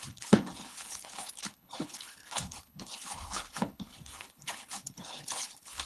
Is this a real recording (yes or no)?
no